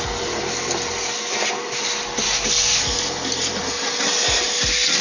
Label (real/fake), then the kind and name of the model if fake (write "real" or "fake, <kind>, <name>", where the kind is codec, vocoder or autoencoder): real